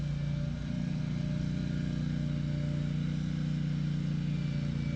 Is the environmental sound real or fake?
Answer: real